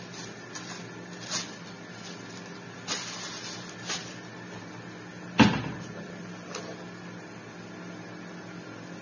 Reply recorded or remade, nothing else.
recorded